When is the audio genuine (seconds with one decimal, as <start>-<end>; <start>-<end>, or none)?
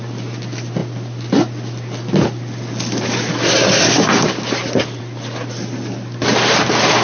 0.0-7.0